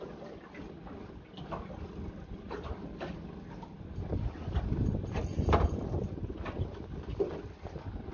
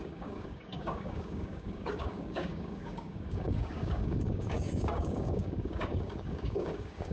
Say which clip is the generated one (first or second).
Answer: second